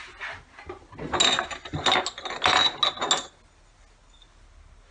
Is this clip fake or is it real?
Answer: real